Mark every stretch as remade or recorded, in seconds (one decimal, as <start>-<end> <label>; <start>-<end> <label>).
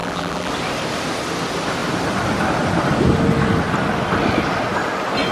0.0-0.5 remade; 0.5-5.3 recorded